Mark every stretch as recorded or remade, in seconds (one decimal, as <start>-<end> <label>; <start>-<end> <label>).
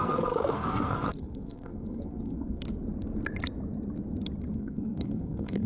0.0-2.6 remade; 2.6-4.5 recorded; 4.5-5.7 remade